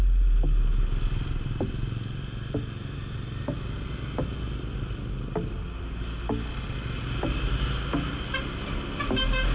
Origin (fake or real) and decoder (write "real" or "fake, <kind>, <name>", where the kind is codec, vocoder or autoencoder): real